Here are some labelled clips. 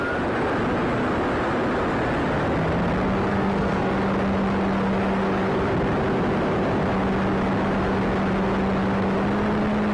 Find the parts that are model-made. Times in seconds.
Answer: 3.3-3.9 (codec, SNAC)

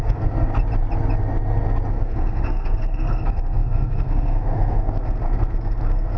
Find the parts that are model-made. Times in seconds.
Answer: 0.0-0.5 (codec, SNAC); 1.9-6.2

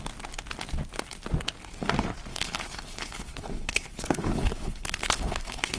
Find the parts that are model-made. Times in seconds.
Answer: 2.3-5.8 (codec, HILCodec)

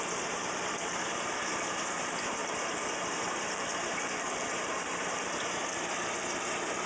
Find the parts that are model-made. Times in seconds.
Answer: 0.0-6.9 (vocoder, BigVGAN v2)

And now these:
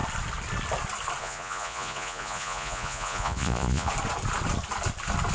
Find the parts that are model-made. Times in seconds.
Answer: 1.2-3.9 (vocoder, Vocos)

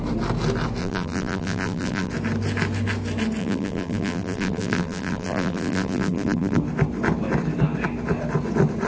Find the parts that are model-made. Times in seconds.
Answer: 0.8-2.1 (vocoder, BigVGAN v2); 3.4-6.6